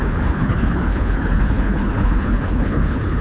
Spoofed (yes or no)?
yes